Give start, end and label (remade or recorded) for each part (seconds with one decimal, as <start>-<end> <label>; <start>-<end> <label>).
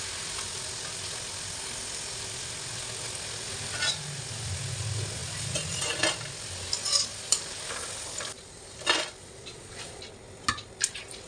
0.0-9.2 recorded; 9.2-10.0 remade; 10.0-11.3 recorded